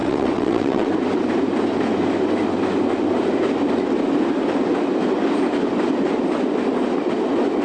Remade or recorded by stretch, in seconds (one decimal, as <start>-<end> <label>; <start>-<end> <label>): 0.0-0.9 remade; 0.9-7.6 recorded